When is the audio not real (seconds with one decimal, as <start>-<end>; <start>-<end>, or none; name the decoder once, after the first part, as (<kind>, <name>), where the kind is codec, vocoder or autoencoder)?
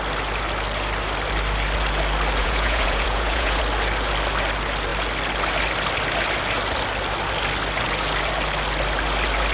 2.4-3.6 (vocoder, Vocos)